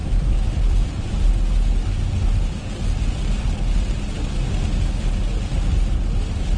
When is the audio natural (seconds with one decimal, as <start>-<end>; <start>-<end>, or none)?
1.3-6.6